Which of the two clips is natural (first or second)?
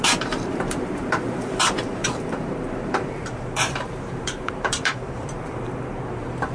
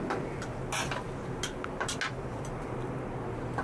second